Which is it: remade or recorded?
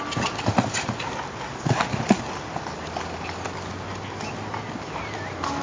recorded